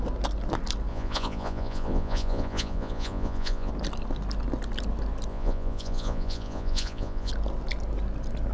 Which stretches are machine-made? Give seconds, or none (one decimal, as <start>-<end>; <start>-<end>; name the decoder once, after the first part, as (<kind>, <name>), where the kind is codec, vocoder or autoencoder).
0.9-3.7 (vocoder, Vocos); 5.3-7.3